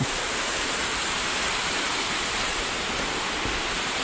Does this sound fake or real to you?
real